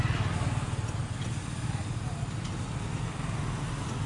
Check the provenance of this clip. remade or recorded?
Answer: recorded